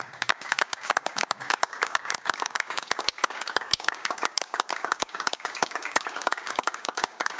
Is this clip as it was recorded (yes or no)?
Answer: no